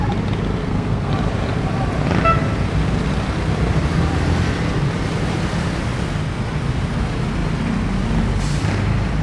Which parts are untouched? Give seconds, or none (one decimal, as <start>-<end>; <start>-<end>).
0.0-0.6; 1.1-9.2